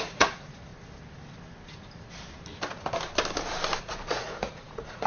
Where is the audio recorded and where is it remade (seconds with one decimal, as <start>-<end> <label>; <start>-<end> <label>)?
0.0-0.7 remade; 0.7-3.8 recorded; 3.8-5.1 remade